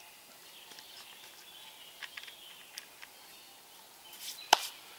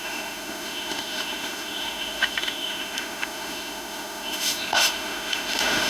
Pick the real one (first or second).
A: first